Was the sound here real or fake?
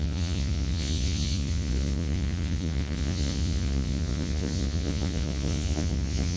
fake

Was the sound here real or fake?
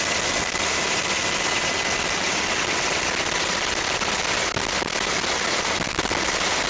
real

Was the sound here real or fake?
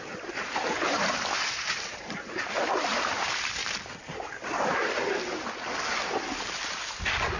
real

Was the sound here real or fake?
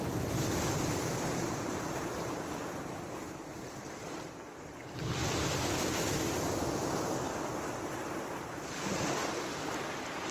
real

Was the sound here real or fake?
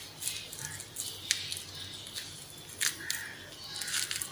real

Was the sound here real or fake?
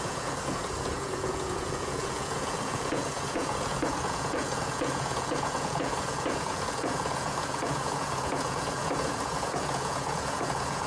fake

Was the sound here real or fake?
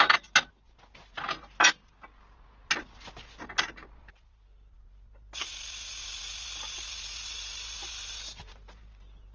real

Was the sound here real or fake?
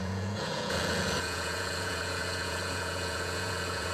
fake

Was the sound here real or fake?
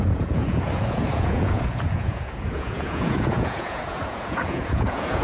fake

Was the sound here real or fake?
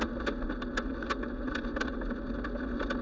real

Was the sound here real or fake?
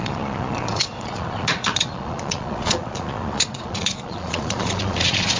fake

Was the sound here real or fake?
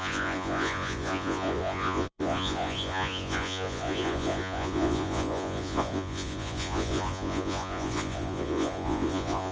fake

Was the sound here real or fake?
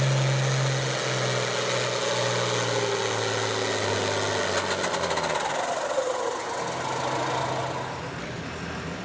real